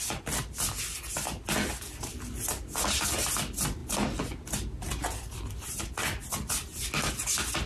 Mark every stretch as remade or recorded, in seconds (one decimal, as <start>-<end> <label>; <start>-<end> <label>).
0.0-7.7 recorded